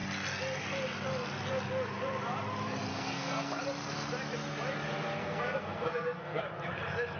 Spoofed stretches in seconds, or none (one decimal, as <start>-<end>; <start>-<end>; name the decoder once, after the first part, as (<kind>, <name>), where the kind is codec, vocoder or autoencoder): 2.9-3.6 (codec, SNAC); 5.2-6.4